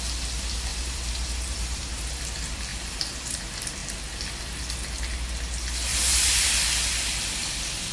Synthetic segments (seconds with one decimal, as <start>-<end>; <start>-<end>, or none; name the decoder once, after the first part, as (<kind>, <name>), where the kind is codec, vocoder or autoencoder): 0.7-2.2 (vocoder, BigVGAN v2); 2.7-3.4; 5.9-6.5